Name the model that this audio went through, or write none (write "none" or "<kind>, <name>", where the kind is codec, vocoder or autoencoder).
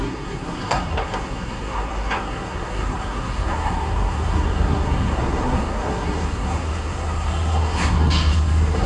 codec, SNAC